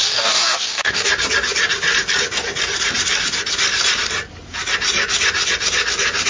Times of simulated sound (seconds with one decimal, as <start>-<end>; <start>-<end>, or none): 0.0-1.1